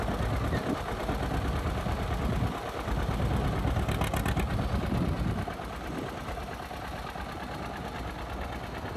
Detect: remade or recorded recorded